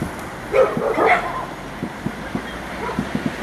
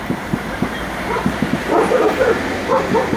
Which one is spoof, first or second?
second